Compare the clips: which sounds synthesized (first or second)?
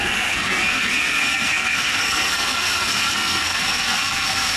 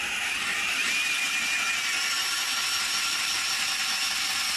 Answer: first